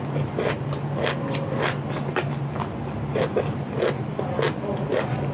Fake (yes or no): no